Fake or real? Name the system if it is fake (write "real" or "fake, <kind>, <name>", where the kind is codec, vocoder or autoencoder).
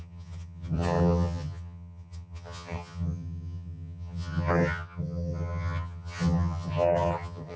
fake, vocoder, HiFi-GAN